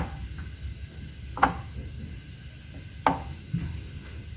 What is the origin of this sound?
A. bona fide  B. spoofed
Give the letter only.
A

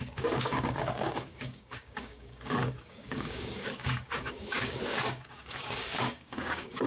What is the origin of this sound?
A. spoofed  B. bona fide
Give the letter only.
A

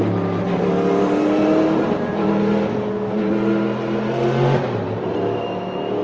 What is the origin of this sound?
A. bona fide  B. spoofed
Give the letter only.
A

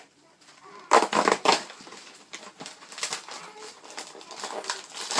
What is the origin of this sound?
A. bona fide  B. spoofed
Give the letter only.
B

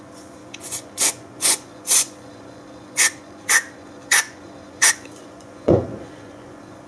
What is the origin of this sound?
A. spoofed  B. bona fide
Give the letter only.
A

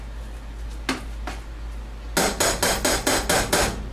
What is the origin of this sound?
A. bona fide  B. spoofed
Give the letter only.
A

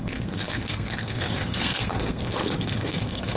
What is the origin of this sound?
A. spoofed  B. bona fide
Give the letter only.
A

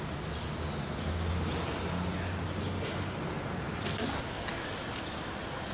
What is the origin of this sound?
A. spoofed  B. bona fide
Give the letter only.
B